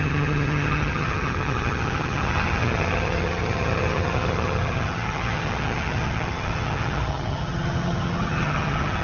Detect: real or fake fake